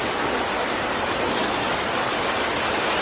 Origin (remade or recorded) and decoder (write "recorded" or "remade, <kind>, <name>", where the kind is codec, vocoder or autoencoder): recorded